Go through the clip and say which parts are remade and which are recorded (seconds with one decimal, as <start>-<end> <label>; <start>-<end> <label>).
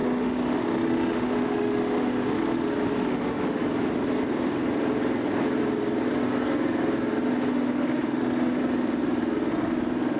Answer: 0.0-3.6 remade; 3.6-7.5 recorded; 7.5-8.6 remade; 8.6-9.5 recorded; 9.5-10.2 remade